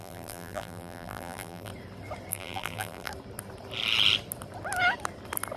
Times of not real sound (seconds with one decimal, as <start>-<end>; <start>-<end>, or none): 0.0-1.7; 2.3-3.1